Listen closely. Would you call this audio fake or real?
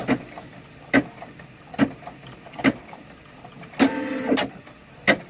real